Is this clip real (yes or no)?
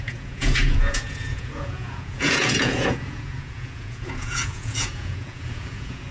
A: no